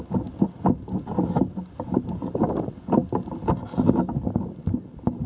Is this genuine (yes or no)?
yes